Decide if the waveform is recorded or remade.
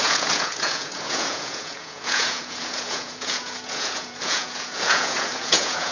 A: remade